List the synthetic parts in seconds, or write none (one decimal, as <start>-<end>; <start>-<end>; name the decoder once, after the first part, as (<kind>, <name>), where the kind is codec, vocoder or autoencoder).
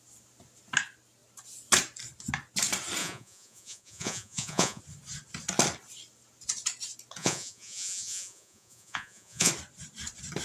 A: 3.0-4.8 (vocoder, Vocos); 7.2-9.5